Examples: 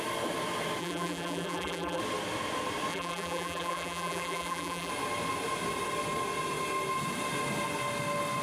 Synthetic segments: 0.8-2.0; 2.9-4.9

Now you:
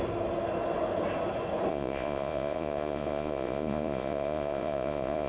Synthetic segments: 1.7-5.3

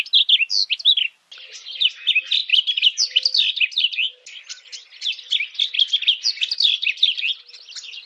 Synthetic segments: none

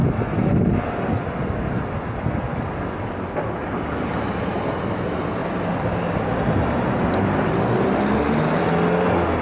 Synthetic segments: none

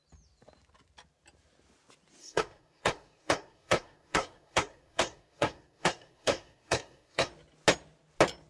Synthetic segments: 2.2-7.3